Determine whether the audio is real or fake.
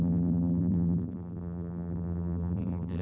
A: fake